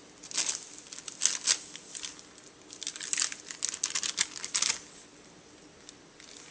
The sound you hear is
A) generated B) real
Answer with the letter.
B